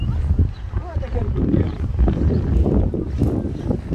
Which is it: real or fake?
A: real